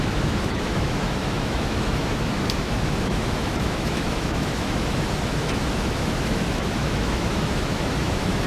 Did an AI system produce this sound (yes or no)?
yes